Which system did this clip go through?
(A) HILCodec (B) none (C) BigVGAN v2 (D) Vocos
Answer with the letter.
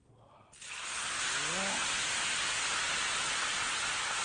B